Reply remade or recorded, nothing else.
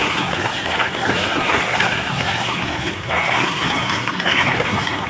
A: remade